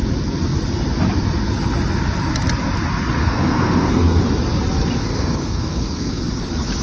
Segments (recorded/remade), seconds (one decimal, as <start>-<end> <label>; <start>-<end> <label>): 0.0-3.2 recorded; 3.2-4.2 remade; 4.2-5.0 recorded; 5.0-6.1 remade; 6.1-6.8 recorded